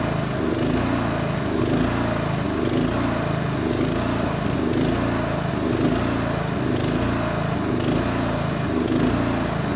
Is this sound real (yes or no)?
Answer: yes